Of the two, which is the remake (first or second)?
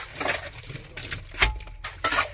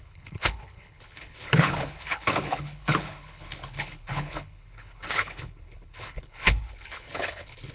second